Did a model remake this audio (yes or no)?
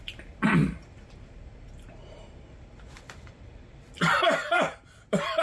yes